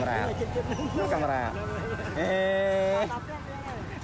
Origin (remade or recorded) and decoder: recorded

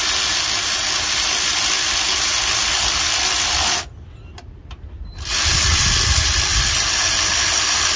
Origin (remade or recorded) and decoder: recorded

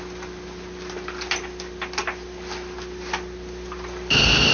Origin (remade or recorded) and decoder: recorded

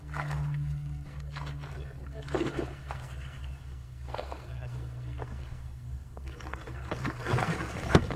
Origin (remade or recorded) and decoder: remade, codec, SNAC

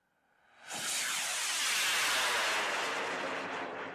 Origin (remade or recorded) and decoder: recorded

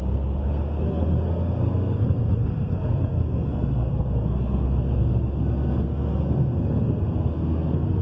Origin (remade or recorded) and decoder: remade, codec, SNAC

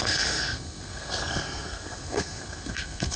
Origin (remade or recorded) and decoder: remade, codec, SNAC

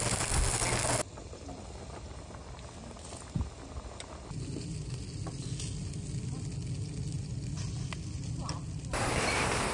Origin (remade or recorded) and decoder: recorded